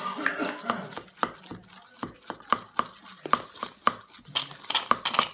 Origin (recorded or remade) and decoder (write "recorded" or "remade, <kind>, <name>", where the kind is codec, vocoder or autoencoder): recorded